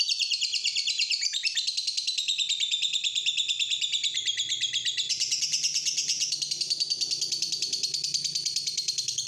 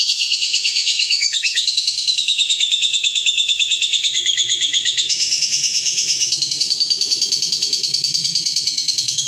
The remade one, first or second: second